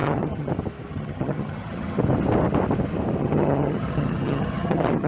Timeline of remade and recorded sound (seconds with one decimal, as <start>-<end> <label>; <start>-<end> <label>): 0.0-0.5 remade; 0.5-0.9 recorded; 0.9-2.0 remade; 2.0-3.2 recorded; 3.2-5.1 remade